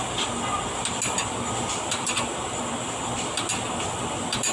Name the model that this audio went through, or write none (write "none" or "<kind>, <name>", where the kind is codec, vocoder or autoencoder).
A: none